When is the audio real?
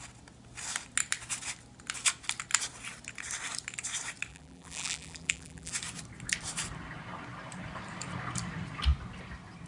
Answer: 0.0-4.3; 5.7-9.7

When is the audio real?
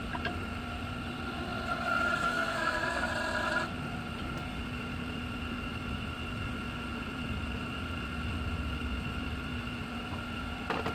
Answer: 0.0-2.2; 3.1-10.9